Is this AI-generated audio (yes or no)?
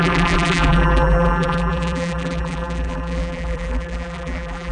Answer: yes